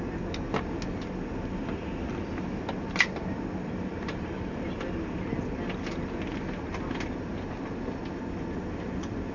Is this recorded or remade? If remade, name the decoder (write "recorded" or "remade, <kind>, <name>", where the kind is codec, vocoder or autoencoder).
recorded